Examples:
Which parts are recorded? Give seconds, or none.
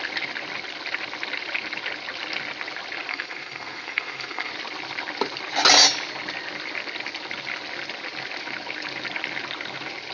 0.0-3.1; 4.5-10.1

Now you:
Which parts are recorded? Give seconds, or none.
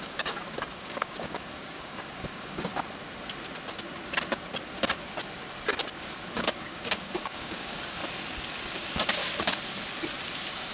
2.7-6.5; 8.0-8.7; 9.2-10.7